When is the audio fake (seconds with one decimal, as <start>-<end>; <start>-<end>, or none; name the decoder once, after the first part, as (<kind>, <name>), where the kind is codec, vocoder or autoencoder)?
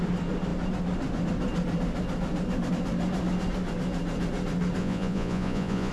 4.8-5.9 (vocoder, Vocos)